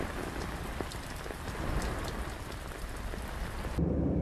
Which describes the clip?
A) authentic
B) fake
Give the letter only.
A